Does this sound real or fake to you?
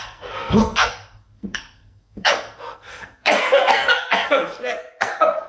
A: fake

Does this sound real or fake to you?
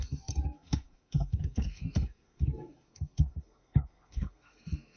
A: fake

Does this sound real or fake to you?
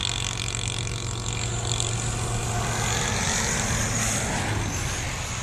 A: real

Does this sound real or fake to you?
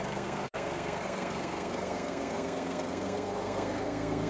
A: fake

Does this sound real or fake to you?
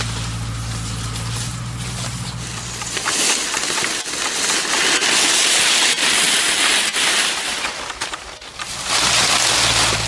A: real